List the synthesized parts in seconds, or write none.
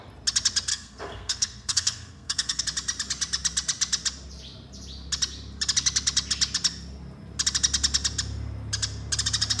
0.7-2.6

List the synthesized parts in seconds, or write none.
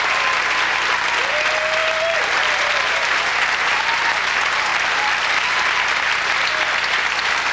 1.8-3.3; 4.7-6.0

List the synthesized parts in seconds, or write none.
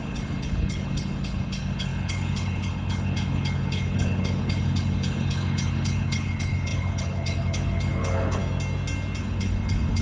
0.0-8.4; 9.2-10.0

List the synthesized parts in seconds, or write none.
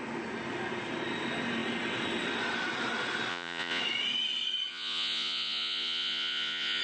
3.3-3.8; 4.7-6.8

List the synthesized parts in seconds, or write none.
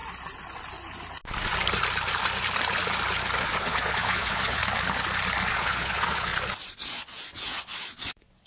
3.4-4.6; 5.5-6.3; 6.9-8.5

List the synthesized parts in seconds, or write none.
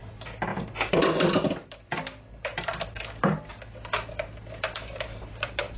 2.5-5.3